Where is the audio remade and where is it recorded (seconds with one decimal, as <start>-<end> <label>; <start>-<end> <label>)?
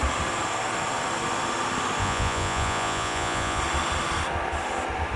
0.0-2.0 recorded; 2.0-3.6 remade; 3.6-5.2 recorded